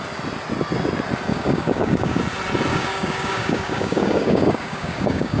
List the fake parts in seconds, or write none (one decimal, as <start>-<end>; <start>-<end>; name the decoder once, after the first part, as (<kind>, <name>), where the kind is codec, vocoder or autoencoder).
1.3-2.2 (codec, DAC); 2.7-5.4